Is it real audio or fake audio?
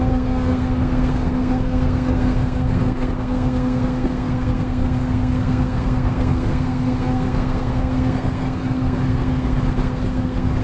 fake